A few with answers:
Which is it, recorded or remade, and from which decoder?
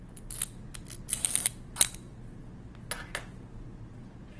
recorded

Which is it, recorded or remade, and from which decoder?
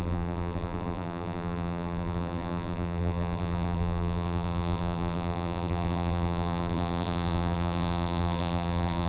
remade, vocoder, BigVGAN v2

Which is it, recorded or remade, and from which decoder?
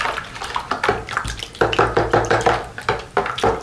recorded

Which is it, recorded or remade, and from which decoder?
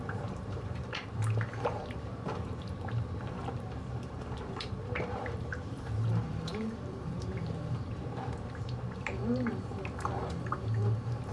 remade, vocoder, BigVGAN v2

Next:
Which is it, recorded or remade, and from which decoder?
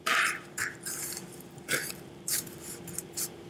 remade, vocoder, BigVGAN v2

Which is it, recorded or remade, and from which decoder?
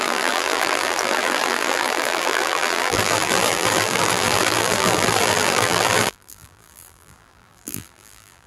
remade, vocoder, BigVGAN v2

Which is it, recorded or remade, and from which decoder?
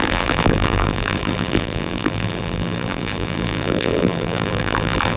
remade, vocoder, BigVGAN v2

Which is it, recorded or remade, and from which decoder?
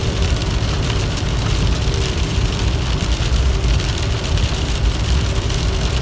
remade, vocoder, BigVGAN v2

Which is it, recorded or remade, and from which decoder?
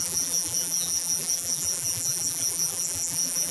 remade, vocoder, BigVGAN v2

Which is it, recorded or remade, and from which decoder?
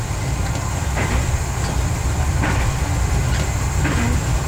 recorded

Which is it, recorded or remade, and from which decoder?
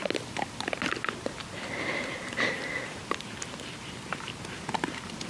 recorded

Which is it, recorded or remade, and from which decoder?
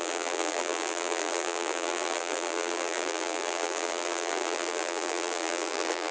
remade, vocoder, BigVGAN v2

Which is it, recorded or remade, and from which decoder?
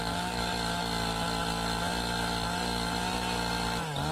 recorded